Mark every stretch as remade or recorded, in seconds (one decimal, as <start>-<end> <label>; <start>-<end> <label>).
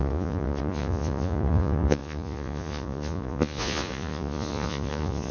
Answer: 0.0-5.3 remade